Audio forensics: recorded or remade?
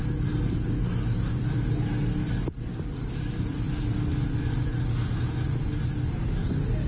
recorded